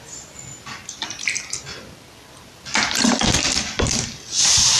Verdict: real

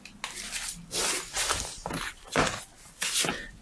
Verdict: real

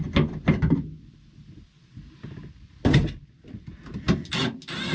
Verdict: real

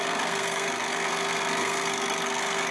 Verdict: fake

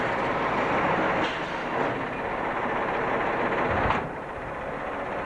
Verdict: real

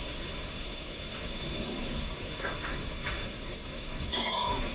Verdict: fake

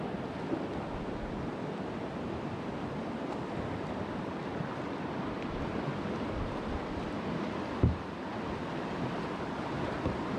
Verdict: real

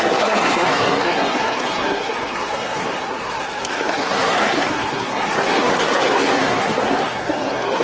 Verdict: fake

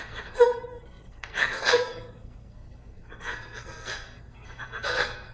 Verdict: fake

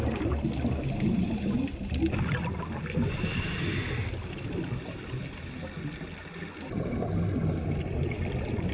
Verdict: real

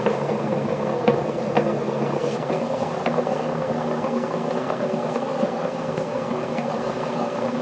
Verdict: fake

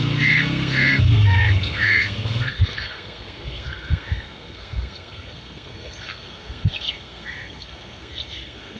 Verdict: fake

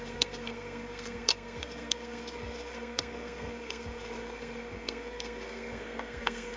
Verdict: fake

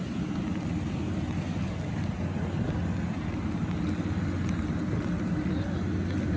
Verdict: real